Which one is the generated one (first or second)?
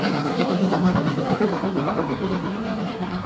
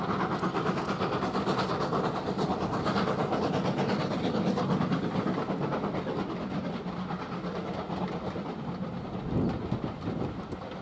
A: first